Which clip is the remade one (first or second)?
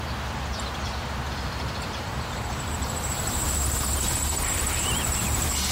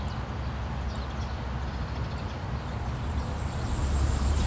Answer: first